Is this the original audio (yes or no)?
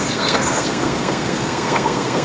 no